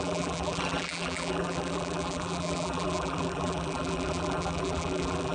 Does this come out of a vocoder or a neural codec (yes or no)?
yes